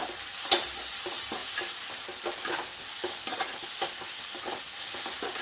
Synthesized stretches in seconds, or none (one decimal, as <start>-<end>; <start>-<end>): none